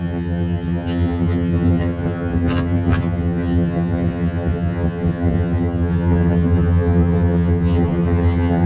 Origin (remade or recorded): remade